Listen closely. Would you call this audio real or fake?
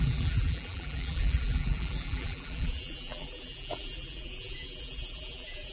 fake